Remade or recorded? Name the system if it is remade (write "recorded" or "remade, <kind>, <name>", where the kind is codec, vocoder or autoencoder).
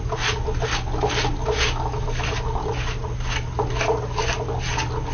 recorded